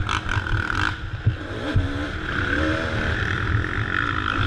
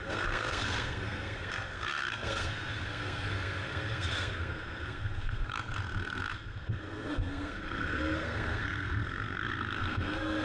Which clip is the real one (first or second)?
first